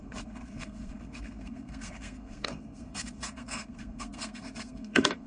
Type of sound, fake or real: fake